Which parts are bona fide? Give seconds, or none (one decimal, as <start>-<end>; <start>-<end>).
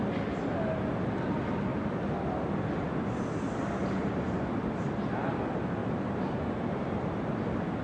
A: 0.0-5.8; 7.1-7.8